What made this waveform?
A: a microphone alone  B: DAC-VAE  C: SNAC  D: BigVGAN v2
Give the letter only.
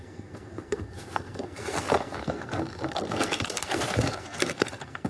C